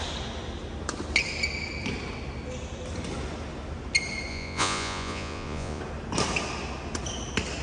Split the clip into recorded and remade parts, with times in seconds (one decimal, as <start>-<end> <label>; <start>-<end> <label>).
0.0-4.3 recorded; 4.3-5.8 remade; 5.8-7.6 recorded